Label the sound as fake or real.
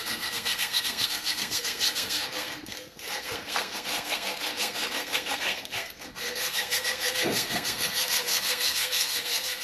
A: fake